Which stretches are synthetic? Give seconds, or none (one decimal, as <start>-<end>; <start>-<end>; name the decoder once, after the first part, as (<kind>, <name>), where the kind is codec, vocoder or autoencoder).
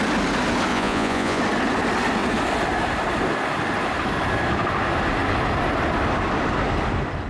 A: 0.7-1.4 (vocoder, Vocos)